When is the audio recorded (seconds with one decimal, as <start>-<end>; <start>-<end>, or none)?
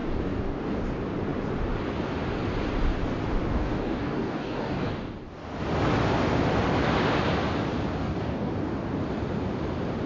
0.8-3.5; 4.9-8.0; 8.5-10.1